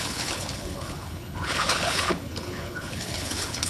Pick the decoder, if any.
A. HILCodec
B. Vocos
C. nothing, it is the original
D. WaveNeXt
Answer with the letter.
A